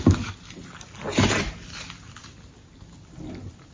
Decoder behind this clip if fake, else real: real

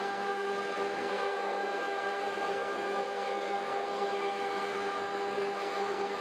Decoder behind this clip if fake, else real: fake, codec, SNAC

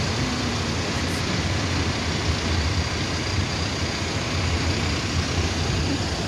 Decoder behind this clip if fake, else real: real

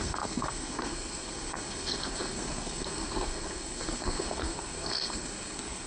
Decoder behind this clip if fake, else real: fake, codec, SNAC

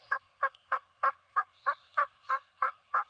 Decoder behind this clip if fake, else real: fake, codec, SNAC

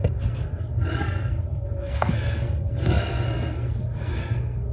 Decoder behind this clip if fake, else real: fake, codec, SNAC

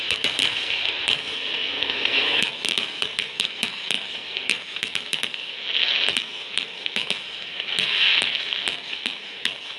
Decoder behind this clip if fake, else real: fake, codec, SNAC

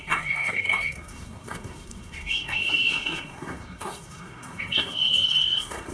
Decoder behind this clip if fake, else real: fake, codec, SNAC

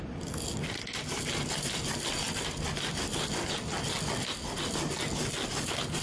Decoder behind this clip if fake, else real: real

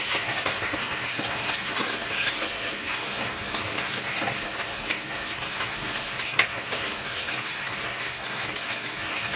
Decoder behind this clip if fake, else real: fake, codec, SNAC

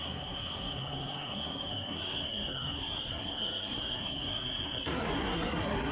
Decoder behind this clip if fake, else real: fake, codec, SNAC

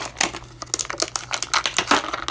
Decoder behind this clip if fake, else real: real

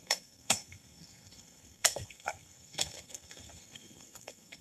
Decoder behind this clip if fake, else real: fake, codec, SNAC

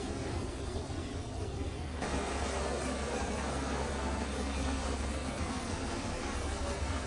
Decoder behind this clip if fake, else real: fake, codec, SNAC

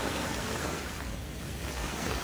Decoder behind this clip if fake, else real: fake, codec, SNAC